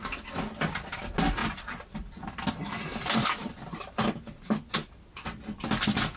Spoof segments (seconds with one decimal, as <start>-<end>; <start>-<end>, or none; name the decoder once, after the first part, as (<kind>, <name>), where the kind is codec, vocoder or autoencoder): none

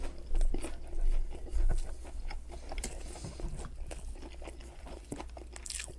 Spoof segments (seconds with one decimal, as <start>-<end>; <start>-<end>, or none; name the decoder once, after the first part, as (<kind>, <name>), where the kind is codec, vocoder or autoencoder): 4.6-5.2 (vocoder, Vocos)

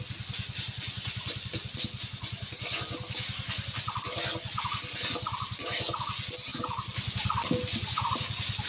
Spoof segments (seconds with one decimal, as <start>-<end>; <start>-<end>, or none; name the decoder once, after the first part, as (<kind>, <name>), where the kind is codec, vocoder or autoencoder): none

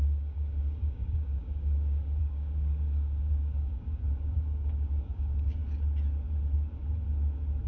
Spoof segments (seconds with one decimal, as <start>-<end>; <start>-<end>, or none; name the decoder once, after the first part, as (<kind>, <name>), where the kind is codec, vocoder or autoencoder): 0.0-5.6 (codec, DAC)

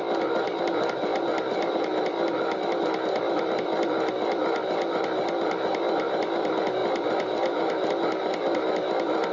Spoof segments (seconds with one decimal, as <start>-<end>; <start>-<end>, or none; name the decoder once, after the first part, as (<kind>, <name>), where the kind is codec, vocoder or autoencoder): none

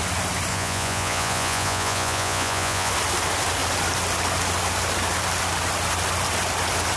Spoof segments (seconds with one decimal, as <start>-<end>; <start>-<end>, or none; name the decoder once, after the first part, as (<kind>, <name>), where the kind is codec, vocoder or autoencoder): 0.5-2.9 (vocoder, Vocos)